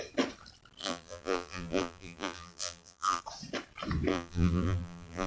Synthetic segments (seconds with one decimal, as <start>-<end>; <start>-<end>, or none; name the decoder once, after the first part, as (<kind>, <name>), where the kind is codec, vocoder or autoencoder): 0.8-3.2 (vocoder, BigVGAN v2); 4.1-5.3